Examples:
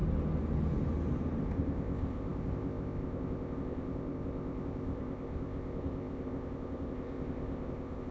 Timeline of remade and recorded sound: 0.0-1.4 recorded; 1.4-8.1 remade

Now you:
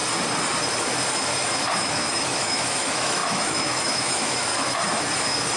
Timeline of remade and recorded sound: 0.0-1.8 recorded; 1.8-4.5 remade; 4.5-5.6 recorded

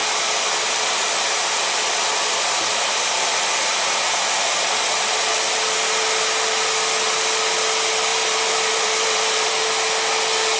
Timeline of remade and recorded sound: 0.0-4.2 remade; 4.2-8.1 recorded; 8.1-9.5 remade; 9.5-10.6 recorded

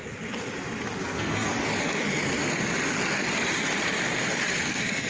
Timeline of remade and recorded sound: 0.0-1.0 recorded; 1.0-1.5 remade; 1.5-4.6 recorded; 4.6-5.1 remade

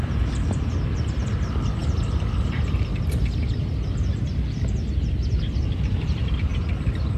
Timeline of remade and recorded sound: 0.0-7.2 recorded

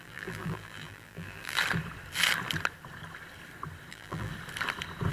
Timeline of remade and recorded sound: 0.0-1.6 remade; 1.6-3.9 recorded; 3.9-4.3 remade; 4.3-5.1 recorded